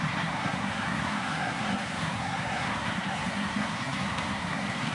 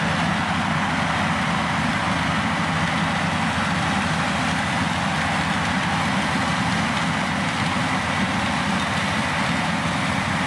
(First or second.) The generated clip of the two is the first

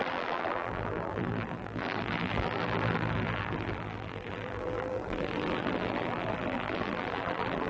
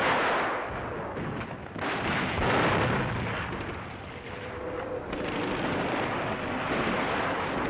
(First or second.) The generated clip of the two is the first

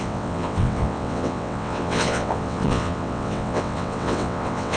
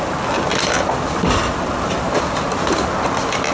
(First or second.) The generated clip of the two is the first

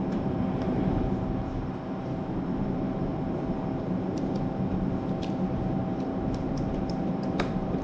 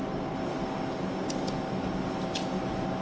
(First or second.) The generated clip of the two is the first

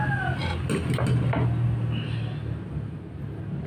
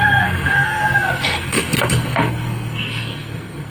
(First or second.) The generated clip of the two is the second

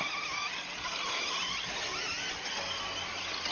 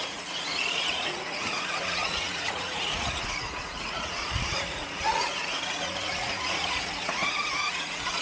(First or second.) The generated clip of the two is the second